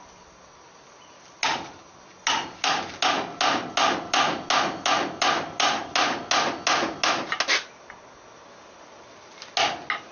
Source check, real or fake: real